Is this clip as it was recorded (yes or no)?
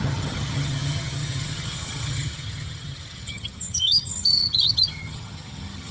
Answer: no